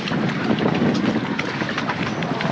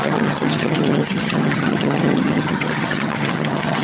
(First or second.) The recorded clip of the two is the first